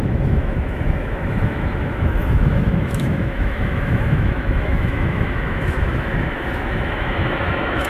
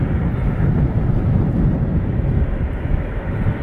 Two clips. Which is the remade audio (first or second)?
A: first